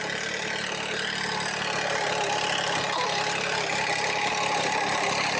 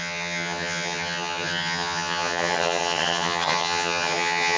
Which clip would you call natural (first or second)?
first